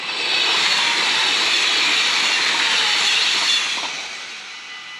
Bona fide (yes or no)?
yes